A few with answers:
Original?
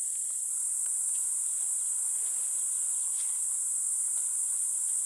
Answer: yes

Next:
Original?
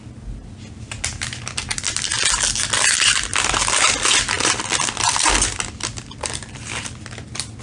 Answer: yes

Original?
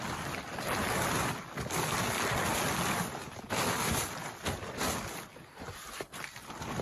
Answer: yes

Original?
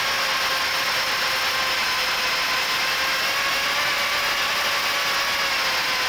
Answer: yes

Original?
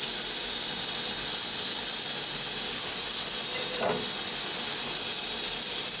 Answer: yes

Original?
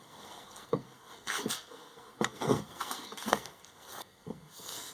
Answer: no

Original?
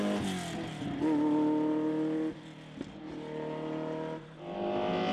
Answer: yes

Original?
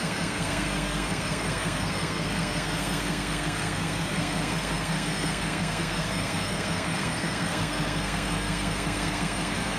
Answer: no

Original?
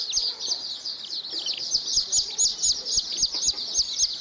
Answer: yes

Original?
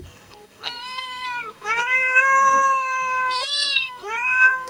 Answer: no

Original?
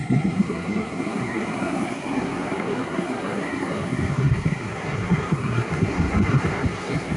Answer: no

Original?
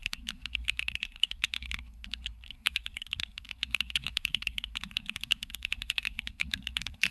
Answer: no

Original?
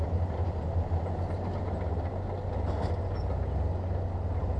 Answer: yes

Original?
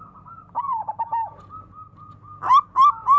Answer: yes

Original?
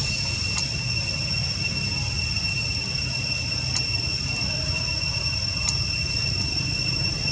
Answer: yes